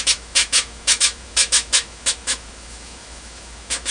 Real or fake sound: fake